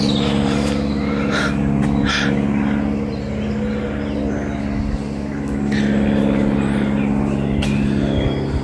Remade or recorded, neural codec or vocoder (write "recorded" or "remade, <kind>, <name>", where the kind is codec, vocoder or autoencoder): recorded